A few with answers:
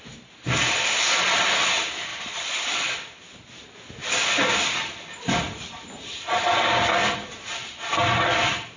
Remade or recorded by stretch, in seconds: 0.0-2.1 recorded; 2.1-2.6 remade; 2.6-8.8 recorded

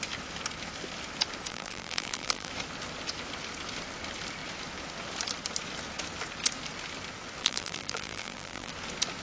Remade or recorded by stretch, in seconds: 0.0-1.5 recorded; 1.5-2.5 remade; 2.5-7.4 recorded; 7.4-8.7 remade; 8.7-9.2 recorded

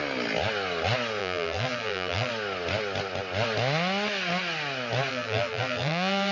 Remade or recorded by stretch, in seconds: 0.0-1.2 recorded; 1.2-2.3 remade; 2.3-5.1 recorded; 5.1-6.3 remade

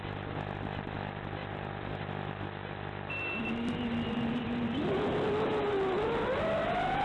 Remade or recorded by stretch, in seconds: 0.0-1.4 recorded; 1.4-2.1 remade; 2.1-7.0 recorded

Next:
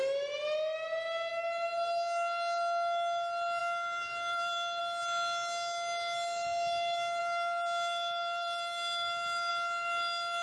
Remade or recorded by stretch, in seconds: 0.0-3.6 recorded; 3.6-4.8 remade; 4.8-7.2 recorded; 7.2-9.5 remade; 9.5-10.4 recorded

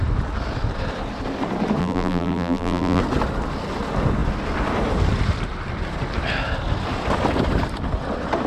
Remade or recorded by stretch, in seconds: 0.0-1.8 recorded; 1.8-3.0 remade; 3.0-8.5 recorded

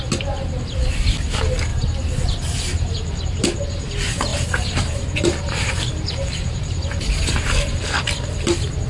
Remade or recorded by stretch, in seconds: 0.0-1.7 recorded; 1.7-3.6 remade; 3.6-4.3 recorded; 4.3-7.2 remade; 7.2-8.9 recorded

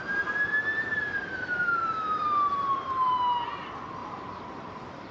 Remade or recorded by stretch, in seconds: 0.0-3.1 remade; 3.1-4.0 recorded; 4.0-5.1 remade